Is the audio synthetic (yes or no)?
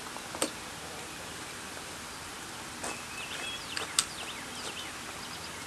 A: no